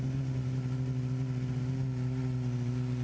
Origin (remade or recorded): recorded